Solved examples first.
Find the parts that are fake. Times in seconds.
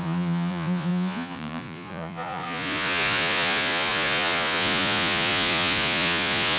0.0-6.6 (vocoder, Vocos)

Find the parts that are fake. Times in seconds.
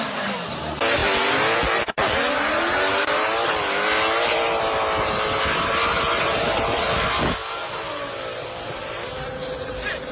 none